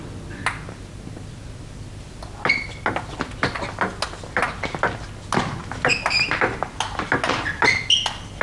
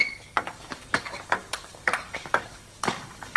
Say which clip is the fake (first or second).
second